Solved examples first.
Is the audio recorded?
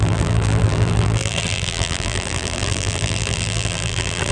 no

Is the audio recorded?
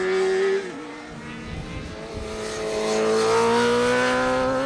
yes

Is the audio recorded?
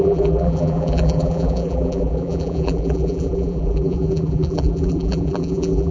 no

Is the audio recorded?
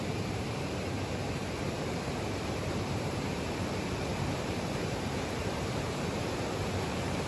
no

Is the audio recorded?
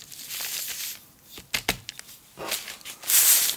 yes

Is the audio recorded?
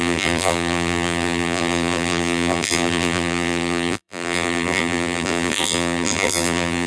no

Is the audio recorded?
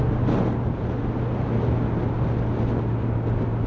yes